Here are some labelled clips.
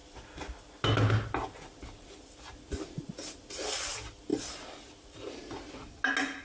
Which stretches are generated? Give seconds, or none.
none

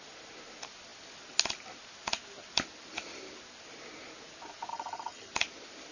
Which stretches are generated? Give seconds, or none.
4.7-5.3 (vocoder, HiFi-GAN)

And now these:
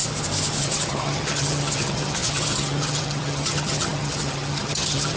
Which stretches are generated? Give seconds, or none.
0.6-5.2 (vocoder, HiFi-GAN)